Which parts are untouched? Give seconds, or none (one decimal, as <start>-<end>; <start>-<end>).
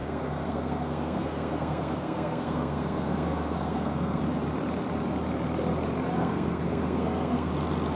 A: 4.2-6.2; 7.5-8.0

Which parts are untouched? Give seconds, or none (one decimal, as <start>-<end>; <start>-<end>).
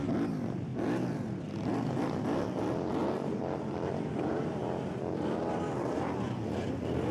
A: 0.7-2.0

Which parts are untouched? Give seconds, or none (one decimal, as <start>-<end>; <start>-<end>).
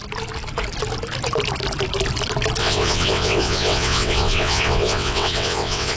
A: 0.0-2.6